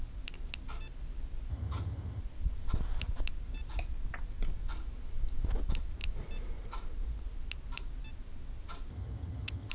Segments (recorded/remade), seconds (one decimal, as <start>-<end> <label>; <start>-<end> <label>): 0.0-1.5 recorded; 1.5-2.2 remade; 2.2-8.9 recorded; 8.9-9.7 remade

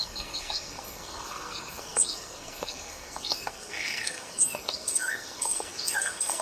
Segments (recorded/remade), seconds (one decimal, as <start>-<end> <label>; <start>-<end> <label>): 0.0-6.4 remade

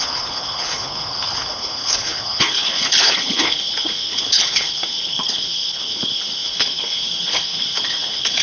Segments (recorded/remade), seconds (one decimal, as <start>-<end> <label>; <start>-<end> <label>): 0.0-8.4 remade

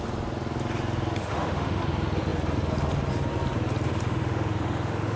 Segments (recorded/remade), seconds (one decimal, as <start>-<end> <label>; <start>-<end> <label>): 0.0-1.2 recorded; 1.2-1.8 remade; 1.8-3.9 recorded; 3.9-5.2 remade

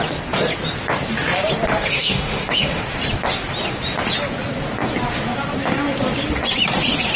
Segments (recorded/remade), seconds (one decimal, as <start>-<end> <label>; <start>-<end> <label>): 0.0-1.9 recorded; 1.9-2.8 remade; 2.8-7.2 recorded

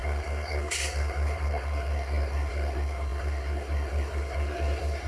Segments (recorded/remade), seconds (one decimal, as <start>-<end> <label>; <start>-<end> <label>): 0.0-5.1 remade

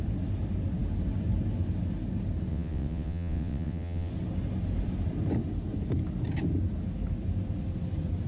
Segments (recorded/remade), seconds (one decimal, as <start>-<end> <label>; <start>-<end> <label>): 0.0-2.5 recorded; 2.5-4.1 remade; 4.1-8.3 recorded

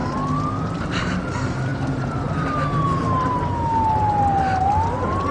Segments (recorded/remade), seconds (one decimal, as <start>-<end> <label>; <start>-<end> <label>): 0.0-5.3 recorded